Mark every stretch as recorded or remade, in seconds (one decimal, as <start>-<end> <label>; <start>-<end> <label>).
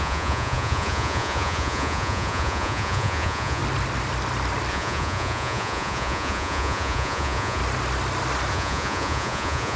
0.0-3.6 remade; 3.6-4.7 recorded; 4.7-7.6 remade; 7.6-8.5 recorded; 8.5-9.8 remade